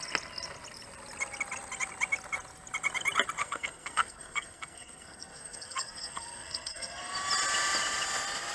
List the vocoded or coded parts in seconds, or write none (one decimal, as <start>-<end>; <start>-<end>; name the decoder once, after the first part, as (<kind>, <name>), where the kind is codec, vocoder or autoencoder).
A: 3.4-7.1 (codec, SNAC)